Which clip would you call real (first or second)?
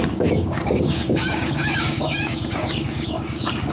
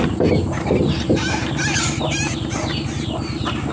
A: second